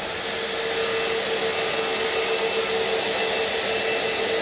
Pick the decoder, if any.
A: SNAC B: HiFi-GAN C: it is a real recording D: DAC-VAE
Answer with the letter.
C